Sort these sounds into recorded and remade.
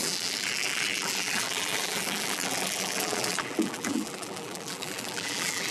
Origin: remade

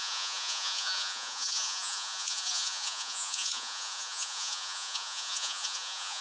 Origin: remade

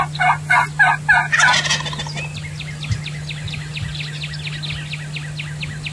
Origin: recorded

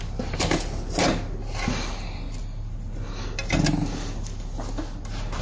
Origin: recorded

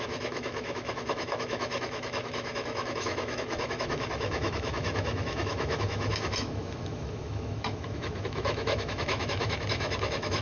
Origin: remade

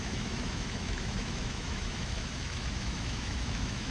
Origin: remade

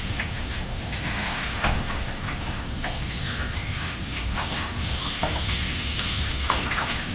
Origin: remade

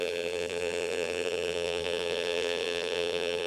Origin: remade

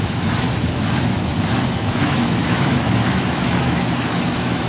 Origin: remade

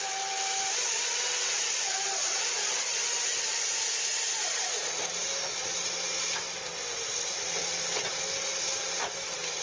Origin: recorded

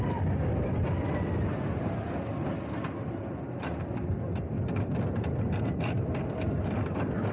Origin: recorded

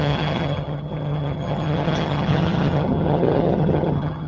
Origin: remade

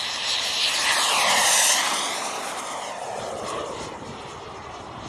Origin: remade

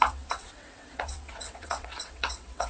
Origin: remade